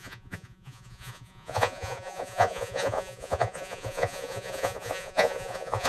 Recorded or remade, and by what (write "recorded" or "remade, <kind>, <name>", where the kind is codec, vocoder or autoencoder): remade, vocoder, Vocos